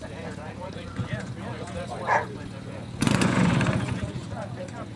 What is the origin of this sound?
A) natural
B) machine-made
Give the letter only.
B